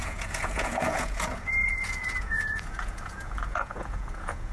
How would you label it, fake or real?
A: fake